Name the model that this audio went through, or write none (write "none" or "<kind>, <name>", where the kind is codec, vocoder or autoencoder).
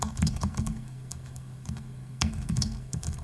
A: codec, SNAC